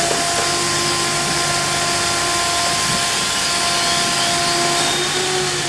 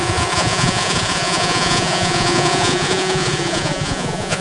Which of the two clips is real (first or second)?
first